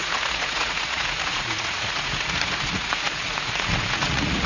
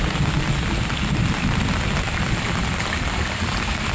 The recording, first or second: second